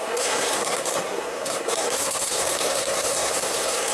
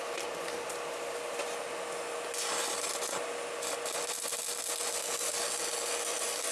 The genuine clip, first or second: second